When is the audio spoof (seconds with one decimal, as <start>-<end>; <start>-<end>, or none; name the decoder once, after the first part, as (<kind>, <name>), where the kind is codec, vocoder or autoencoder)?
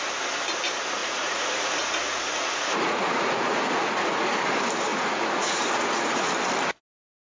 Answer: 1.0-4.4 (vocoder, Vocos); 4.9-6.3